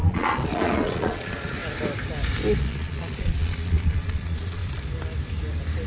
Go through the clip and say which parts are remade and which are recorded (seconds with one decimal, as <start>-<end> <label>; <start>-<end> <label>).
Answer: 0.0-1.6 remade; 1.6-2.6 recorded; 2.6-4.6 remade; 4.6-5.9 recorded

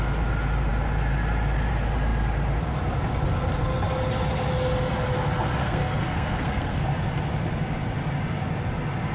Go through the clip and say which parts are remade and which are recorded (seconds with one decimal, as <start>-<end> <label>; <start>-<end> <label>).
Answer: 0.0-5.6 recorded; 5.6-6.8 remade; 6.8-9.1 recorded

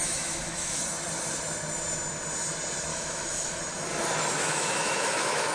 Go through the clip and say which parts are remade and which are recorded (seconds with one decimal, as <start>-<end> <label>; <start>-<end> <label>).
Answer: 0.0-0.8 remade; 0.8-2.9 recorded; 2.9-3.6 remade; 3.6-4.4 recorded; 4.4-5.5 remade

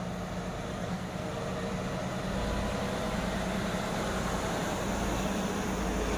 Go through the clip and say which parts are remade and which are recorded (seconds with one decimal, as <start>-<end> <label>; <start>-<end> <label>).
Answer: 0.0-0.7 recorded; 0.7-1.3 remade; 1.3-6.2 recorded

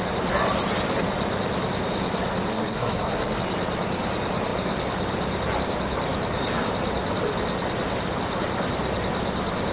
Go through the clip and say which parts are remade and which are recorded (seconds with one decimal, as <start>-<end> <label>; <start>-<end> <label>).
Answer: 0.0-2.5 recorded; 2.5-3.4 remade; 3.4-9.7 recorded

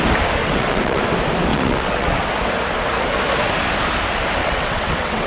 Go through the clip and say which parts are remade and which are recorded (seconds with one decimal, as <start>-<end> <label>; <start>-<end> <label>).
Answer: 0.0-0.4 recorded; 0.4-1.1 remade; 1.1-1.5 recorded; 1.5-2.2 remade; 2.2-4.4 recorded; 4.4-5.3 remade